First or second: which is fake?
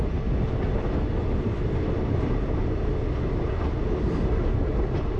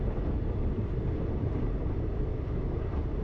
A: second